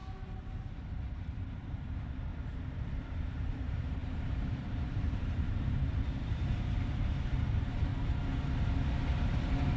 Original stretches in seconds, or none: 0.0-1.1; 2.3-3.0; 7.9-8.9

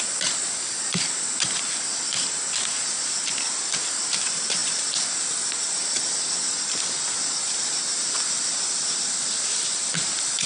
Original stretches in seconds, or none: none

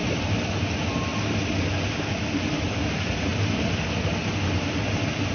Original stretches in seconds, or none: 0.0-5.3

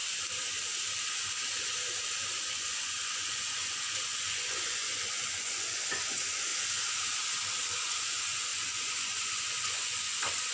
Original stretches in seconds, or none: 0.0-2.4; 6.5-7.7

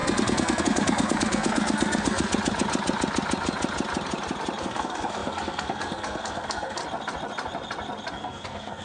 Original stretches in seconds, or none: 2.3-4.6; 6.8-8.1

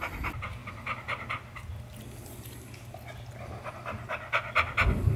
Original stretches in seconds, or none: 0.0-5.2